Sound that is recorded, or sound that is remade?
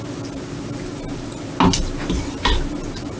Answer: recorded